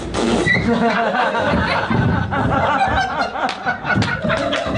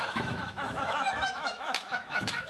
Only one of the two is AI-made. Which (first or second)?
second